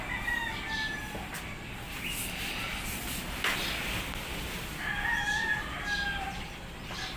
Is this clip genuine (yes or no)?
yes